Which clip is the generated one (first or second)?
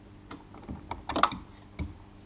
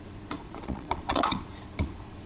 second